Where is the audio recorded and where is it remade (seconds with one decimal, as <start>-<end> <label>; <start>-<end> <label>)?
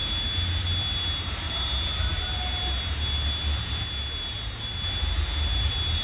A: 0.0-6.0 recorded